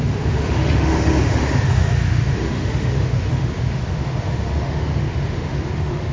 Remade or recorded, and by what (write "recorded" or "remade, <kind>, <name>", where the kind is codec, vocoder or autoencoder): remade, autoencoder, DAC-VAE